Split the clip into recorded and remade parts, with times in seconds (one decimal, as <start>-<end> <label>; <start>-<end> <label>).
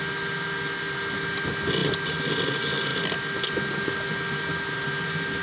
0.0-5.4 recorded